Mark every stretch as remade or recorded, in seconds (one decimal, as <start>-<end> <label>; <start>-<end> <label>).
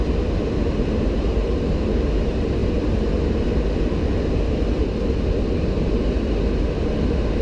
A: 0.0-7.4 recorded